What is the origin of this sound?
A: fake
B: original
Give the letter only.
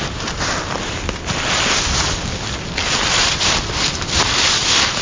B